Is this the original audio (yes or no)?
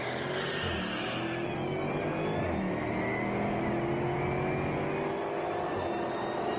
yes